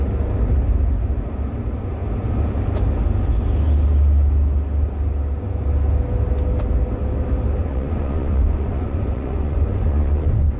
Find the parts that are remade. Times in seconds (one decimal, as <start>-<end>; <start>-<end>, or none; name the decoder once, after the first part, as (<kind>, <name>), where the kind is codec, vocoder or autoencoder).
7.6-10.6 (vocoder, Vocos)